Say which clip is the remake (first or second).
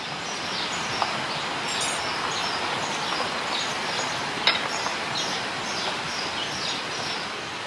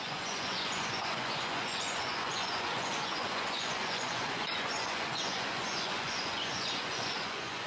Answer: second